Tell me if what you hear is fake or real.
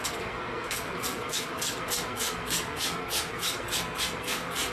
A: fake